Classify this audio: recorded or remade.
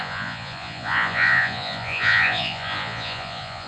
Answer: remade